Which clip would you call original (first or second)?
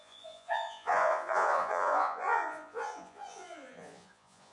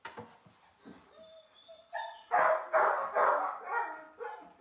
second